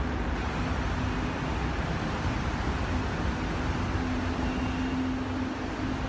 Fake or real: real